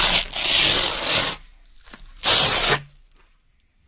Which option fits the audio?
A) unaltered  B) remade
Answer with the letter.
A